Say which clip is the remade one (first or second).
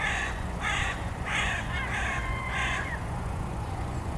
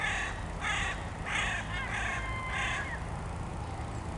first